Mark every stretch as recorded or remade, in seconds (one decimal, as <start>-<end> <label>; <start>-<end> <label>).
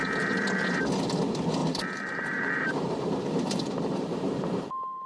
0.0-0.5 remade; 0.5-1.6 recorded; 1.6-5.1 remade